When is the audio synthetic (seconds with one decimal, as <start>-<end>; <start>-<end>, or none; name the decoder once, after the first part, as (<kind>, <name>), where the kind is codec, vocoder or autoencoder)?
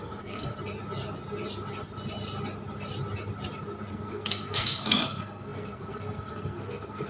0.0-0.5 (codec, SNAC); 3.9-7.1